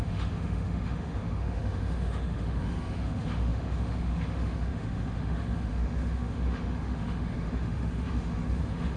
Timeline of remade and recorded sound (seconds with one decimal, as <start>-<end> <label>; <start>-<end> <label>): 0.0-9.0 remade